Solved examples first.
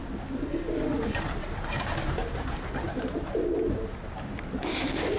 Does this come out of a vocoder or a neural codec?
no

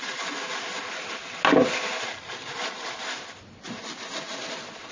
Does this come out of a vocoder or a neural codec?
no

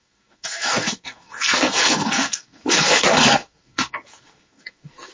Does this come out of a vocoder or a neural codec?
yes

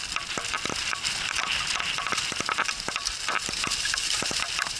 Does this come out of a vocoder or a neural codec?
no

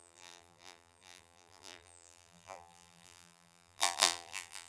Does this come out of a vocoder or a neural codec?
yes